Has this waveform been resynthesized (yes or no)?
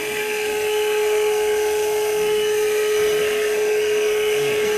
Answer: yes